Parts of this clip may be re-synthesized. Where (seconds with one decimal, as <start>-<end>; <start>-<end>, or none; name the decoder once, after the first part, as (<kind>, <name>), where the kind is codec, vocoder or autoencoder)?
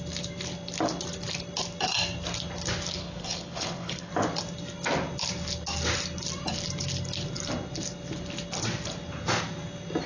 3.0-4.1 (codec, HILCodec)